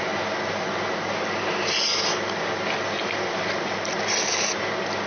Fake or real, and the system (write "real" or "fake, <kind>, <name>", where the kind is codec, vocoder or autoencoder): real